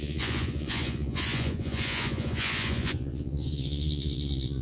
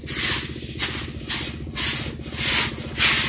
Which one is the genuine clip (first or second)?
second